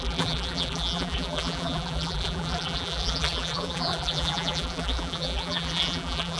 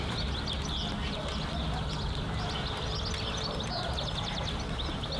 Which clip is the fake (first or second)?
first